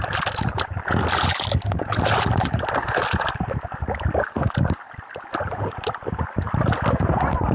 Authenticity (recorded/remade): recorded